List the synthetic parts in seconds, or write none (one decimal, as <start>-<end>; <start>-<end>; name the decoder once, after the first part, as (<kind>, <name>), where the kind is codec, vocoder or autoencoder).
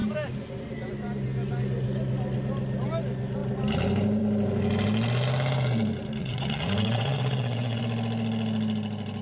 6.2-7.8 (vocoder, WaveNeXt)